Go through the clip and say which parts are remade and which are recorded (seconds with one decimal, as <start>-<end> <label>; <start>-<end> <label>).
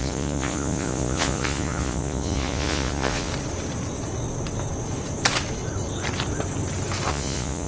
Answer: 0.0-3.3 remade; 3.3-7.1 recorded; 7.1-7.7 remade